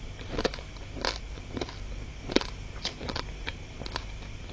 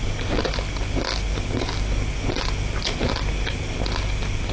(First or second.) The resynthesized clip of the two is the first